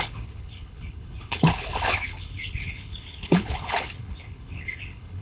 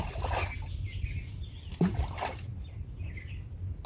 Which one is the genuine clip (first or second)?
second